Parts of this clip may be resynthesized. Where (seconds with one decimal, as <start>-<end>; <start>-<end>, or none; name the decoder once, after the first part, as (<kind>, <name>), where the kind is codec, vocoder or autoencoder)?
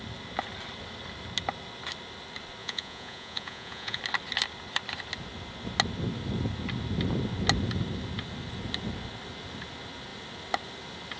2.6-4.0 (vocoder, Vocos)